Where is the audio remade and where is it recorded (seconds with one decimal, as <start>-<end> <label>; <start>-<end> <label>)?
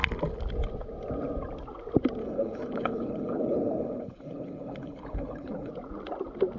0.0-2.2 recorded; 2.2-5.7 remade; 5.7-6.6 recorded